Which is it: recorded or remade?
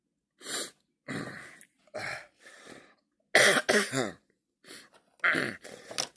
recorded